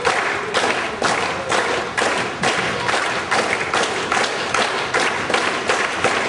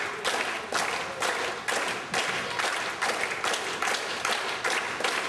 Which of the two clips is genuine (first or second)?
second